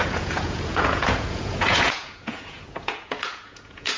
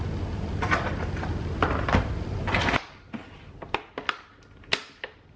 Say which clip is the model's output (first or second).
first